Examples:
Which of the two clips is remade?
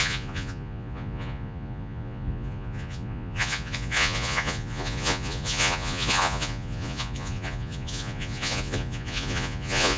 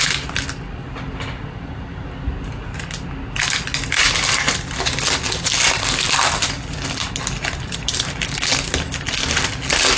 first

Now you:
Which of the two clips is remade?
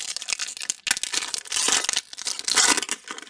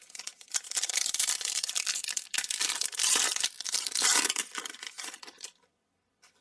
second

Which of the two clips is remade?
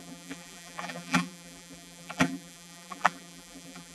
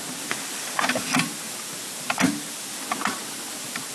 first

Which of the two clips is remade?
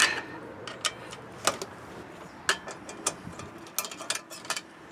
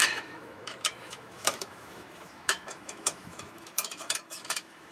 second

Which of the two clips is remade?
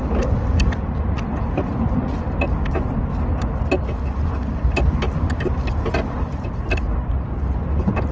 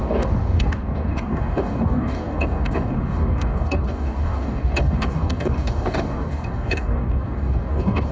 second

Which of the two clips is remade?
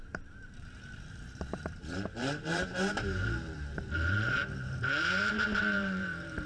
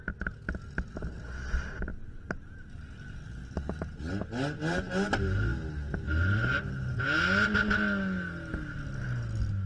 first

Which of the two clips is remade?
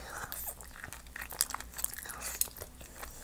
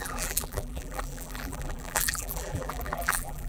second